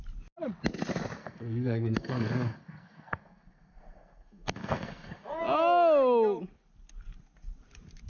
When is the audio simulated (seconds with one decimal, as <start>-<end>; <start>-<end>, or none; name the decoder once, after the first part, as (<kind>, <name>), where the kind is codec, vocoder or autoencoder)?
1.2-5.4 (codec, SNAC)